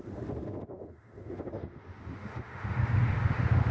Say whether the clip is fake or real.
fake